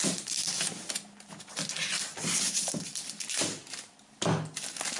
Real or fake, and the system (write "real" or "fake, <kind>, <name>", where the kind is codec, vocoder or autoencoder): real